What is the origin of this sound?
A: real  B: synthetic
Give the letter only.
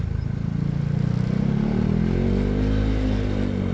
A